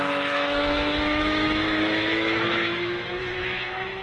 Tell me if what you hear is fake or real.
fake